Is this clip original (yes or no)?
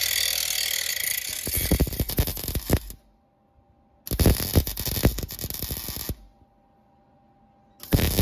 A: yes